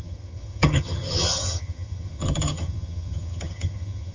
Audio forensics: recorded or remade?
remade